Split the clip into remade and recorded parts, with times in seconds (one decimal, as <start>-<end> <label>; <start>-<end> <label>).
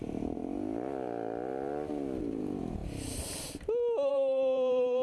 0.0-0.4 remade; 0.4-2.2 recorded; 2.2-2.8 remade; 2.8-4.1 recorded; 4.1-5.0 remade